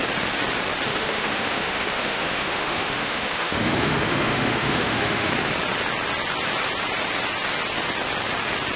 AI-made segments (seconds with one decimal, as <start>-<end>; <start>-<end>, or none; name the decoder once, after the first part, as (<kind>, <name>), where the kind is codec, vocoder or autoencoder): 0.9-5.3 (autoencoder, DAC-VAE)

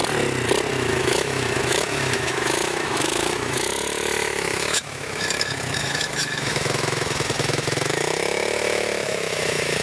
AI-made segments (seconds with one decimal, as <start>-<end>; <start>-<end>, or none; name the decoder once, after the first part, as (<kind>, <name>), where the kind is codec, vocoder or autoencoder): 0.7-9.8 (autoencoder, DAC-VAE)

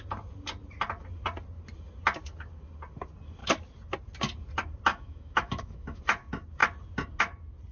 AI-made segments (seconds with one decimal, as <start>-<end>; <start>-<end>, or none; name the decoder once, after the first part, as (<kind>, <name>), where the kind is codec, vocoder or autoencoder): 4.9-6.0 (autoencoder, DAC-VAE)

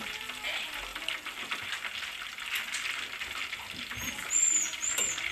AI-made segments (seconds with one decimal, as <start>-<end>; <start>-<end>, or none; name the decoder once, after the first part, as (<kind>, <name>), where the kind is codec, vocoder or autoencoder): none

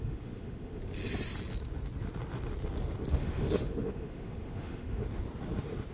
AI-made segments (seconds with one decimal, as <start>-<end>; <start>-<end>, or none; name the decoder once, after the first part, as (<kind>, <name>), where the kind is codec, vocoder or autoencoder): 0.0-0.8 (autoencoder, DAC-VAE); 3.1-5.0

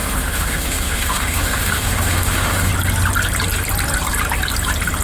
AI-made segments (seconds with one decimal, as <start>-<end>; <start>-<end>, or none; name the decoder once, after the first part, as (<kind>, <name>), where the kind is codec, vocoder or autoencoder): 0.0-2.7 (autoencoder, DAC-VAE)